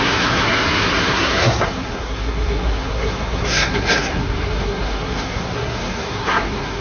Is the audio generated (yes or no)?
yes